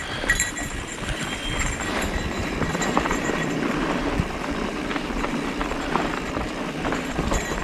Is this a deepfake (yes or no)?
yes